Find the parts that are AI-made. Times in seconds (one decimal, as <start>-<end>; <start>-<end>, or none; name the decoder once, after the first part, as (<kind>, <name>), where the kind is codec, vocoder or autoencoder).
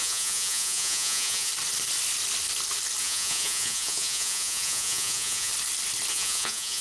0.0-1.5 (vocoder, Vocos); 3.0-5.5; 6.1-6.8